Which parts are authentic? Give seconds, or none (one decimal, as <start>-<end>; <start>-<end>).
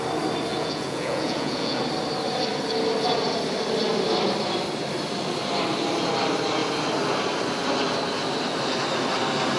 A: 0.0-0.5; 1.8-9.6